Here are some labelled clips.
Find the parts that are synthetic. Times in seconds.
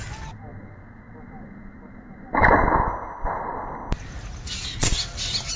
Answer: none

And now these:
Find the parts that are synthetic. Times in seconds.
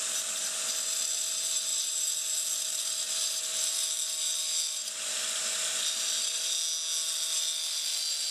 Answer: none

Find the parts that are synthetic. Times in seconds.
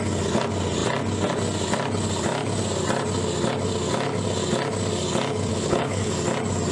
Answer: 5.5-6.1 (codec, HILCodec)